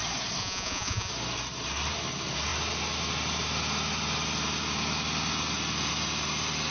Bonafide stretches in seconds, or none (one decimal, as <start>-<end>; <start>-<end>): 0.0-0.4; 1.1-6.7